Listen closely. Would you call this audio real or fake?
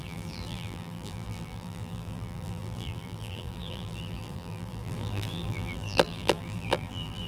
fake